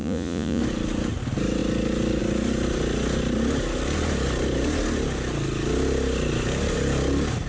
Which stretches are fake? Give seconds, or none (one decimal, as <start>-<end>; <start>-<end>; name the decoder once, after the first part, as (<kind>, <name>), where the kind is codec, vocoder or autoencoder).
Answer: 0.0-0.6 (vocoder, Vocos)